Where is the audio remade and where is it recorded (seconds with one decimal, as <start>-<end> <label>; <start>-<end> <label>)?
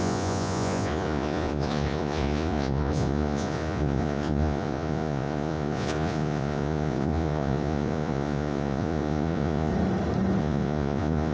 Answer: 0.0-9.7 remade; 9.7-10.4 recorded; 10.4-11.3 remade